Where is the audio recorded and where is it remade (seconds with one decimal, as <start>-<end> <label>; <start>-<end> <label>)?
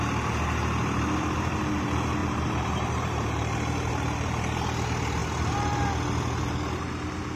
0.0-2.2 recorded; 2.2-4.6 remade; 4.6-7.4 recorded